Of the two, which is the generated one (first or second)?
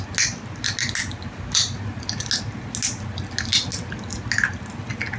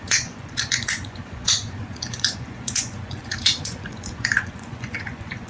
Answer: second